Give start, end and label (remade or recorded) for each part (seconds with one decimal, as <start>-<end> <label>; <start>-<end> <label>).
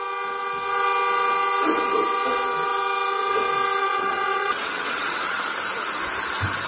0.0-3.8 recorded; 3.8-5.4 remade; 5.4-6.7 recorded